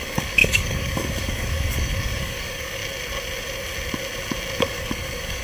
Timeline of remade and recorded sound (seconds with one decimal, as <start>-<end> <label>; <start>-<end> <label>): 0.0-2.8 remade; 2.8-4.6 recorded; 4.6-5.4 remade